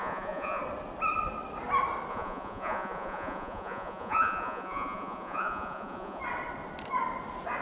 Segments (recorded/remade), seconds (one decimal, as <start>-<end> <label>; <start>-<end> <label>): 0.0-0.6 remade; 0.6-2.1 recorded; 2.1-6.2 remade; 6.2-7.6 recorded